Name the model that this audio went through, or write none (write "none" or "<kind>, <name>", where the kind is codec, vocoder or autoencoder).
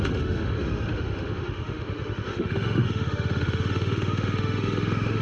autoencoder, DAC-VAE